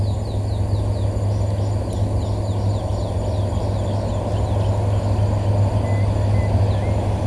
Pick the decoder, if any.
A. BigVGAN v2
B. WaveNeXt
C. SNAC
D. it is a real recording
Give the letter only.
D